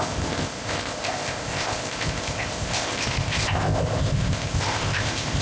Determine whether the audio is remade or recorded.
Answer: remade